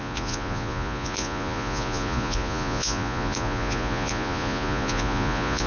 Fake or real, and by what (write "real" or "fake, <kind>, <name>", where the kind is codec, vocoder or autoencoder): fake, vocoder, Vocos